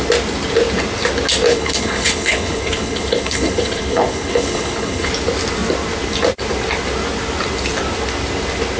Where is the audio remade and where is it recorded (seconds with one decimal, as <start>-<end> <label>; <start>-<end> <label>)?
0.0-1.5 recorded; 1.5-5.1 remade; 5.1-8.8 recorded